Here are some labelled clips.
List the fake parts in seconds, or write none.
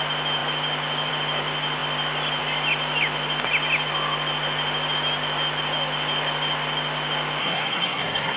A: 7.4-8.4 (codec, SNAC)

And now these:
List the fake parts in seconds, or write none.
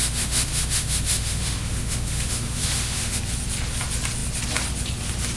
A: 0.0-3.2 (autoencoder, DAC-VAE)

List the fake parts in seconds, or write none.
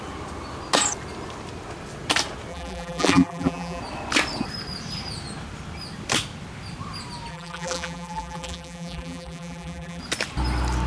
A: 2.5-3.8 (vocoder, BigVGAN v2); 7.3-10.0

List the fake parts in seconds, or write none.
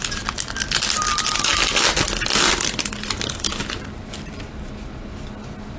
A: none